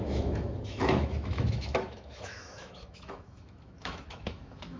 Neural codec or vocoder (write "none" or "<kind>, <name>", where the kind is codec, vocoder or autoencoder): autoencoder, DAC-VAE